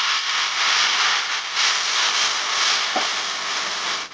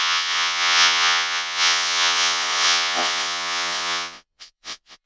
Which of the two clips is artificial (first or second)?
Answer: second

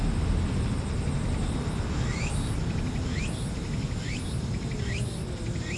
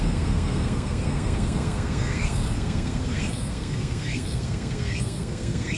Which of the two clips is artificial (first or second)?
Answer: second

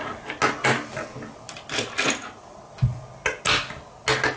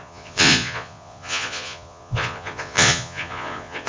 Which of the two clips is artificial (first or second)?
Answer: second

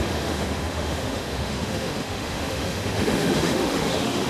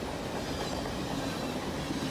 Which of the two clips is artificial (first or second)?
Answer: first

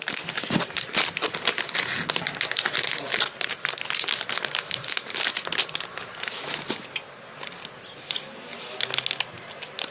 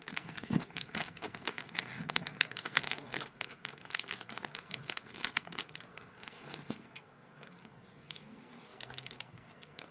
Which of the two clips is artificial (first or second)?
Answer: second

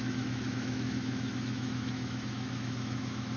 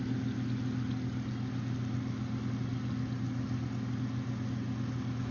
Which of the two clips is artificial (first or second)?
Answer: first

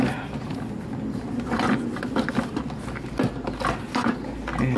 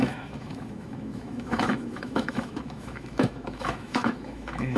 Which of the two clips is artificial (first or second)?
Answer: second